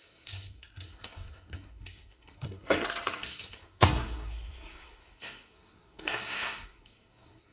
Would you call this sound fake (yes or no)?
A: yes